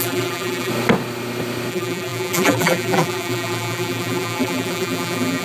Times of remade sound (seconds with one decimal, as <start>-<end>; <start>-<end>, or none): 0.0-0.7; 1.7-5.4

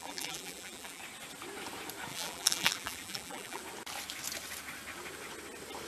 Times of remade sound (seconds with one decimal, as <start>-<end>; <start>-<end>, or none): 0.0-1.0; 2.1-3.6

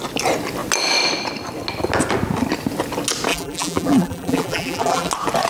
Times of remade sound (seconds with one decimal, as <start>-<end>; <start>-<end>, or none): 3.3-5.1

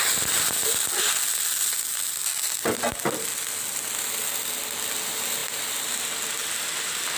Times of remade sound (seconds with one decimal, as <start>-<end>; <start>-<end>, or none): 5.4-5.9